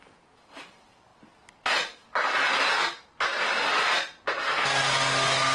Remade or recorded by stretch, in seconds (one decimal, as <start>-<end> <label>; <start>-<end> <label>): 0.0-5.5 recorded